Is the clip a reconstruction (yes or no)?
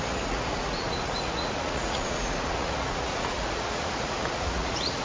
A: yes